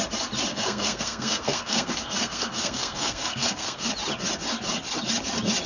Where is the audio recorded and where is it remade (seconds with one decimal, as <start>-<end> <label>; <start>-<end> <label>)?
0.0-0.5 recorded; 0.5-3.9 remade; 3.9-5.7 recorded